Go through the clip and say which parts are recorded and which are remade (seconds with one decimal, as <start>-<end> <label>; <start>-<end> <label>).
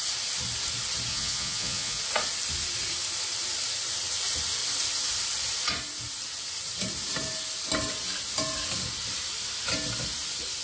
0.0-1.1 recorded; 1.1-2.0 remade; 2.0-10.6 recorded